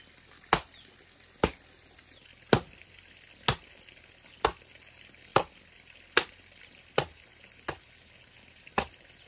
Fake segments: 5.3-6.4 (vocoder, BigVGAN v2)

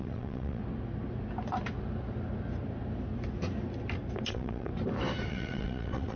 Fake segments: 0.0-0.6 (vocoder, WaveNeXt); 4.3-4.7; 5.3-6.2